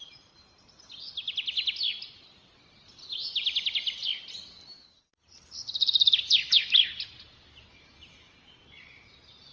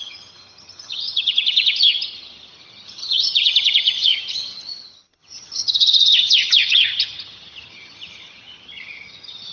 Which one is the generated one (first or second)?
second